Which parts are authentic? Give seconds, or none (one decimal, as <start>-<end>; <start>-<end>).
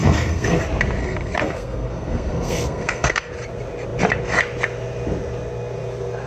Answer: 0.6-1.0; 3.3-6.3